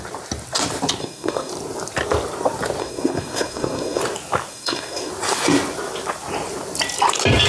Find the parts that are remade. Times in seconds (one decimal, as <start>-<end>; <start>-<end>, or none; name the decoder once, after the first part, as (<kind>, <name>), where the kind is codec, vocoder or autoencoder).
1.0-1.5 (codec, SNAC); 2.8-4.0; 4.5-5.1